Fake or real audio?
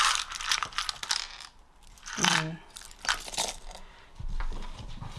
fake